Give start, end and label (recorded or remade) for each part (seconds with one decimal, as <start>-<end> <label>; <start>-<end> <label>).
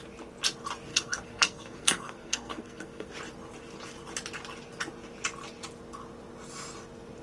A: 0.0-0.9 recorded; 0.9-3.1 remade; 3.1-7.2 recorded